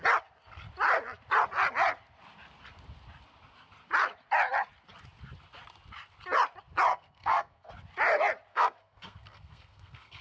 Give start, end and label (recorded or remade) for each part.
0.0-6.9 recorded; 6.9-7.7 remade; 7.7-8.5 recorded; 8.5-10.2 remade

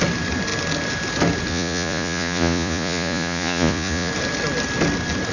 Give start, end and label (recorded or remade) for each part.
0.0-1.5 recorded; 1.5-4.1 remade; 4.1-5.3 recorded

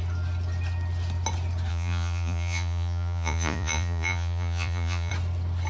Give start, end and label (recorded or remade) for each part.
0.0-1.7 recorded; 1.7-5.1 remade; 5.1-5.7 recorded

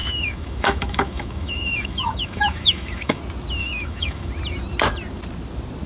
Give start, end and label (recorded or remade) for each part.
0.0-3.2 remade; 3.2-3.6 recorded; 3.6-4.3 remade; 4.3-5.9 recorded

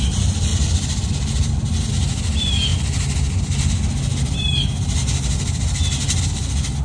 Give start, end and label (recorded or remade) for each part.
0.0-6.8 recorded